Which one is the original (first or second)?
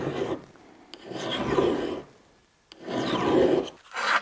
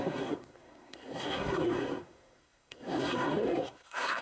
first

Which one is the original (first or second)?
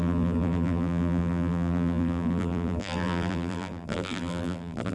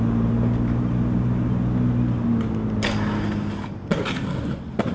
second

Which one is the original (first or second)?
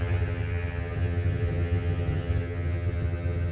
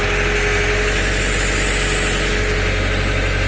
second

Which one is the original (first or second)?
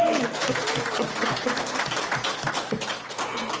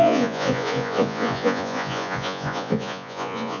first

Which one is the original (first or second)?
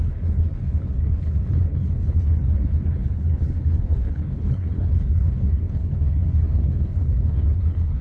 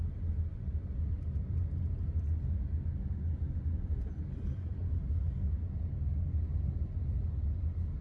second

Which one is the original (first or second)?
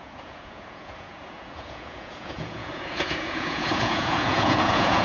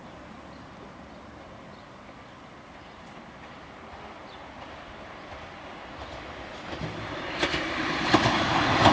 second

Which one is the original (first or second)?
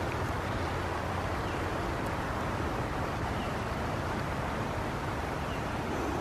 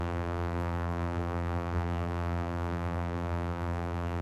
first